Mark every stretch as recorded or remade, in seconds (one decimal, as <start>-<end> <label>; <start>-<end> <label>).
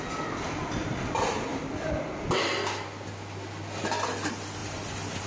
0.0-5.3 recorded